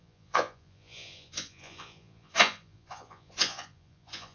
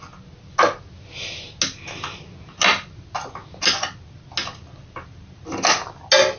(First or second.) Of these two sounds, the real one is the second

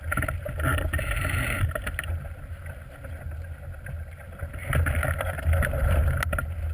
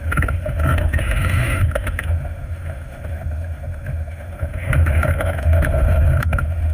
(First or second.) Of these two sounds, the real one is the first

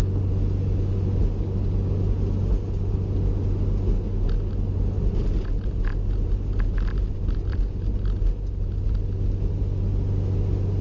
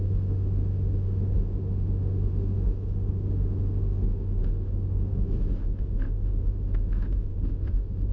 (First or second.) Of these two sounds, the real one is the first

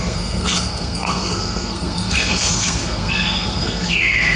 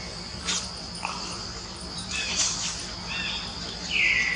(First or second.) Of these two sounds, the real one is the second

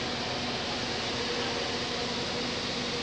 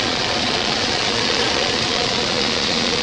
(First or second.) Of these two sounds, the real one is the first